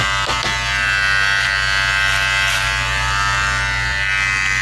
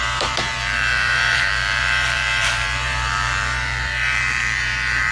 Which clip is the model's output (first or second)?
second